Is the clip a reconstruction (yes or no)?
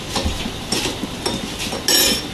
no